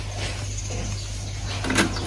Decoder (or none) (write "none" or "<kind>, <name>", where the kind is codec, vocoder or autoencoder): none